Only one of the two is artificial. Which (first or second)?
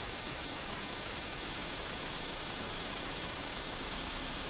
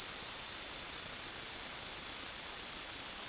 first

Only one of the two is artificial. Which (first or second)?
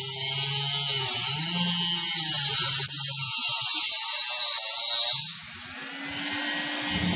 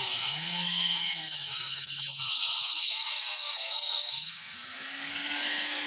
second